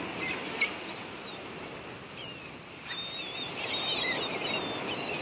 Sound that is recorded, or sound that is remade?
recorded